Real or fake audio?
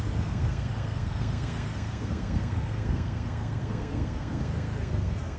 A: fake